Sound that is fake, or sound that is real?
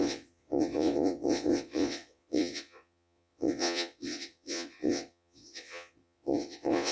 fake